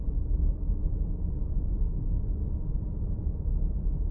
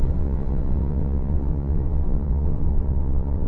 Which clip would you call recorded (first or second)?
first